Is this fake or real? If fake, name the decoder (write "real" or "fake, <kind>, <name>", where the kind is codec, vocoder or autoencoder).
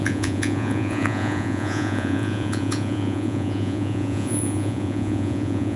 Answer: fake, vocoder, Vocos